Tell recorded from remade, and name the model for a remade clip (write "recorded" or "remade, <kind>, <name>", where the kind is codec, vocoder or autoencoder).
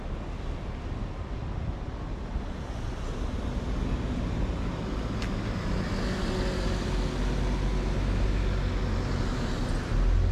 recorded